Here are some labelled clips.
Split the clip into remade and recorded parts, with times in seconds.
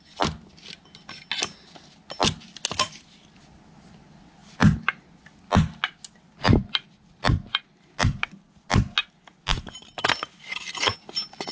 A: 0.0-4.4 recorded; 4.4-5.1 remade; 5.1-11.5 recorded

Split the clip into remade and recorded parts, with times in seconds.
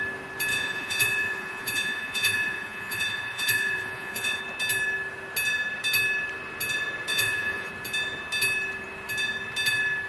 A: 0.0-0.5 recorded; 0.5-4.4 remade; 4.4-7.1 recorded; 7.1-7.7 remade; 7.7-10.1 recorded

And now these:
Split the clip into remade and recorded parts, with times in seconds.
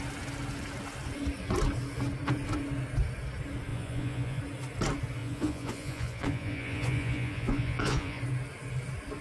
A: 0.0-3.7 recorded; 3.7-4.4 remade; 4.4-5.2 recorded; 5.2-8.2 remade; 8.2-9.2 recorded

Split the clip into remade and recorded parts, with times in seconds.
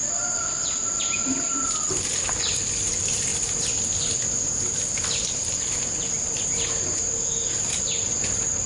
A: 0.0-8.7 recorded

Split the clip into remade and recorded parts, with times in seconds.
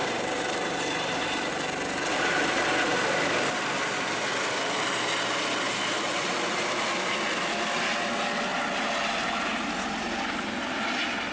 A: 0.0-1.5 remade; 1.5-11.3 recorded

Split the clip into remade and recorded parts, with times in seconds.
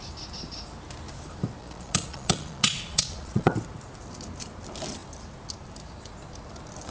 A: 0.0-1.6 recorded; 1.6-3.5 remade; 3.5-6.9 recorded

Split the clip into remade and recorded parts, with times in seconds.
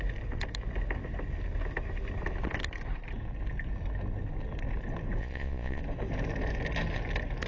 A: 0.0-5.2 recorded; 5.2-5.8 remade; 5.8-7.5 recorded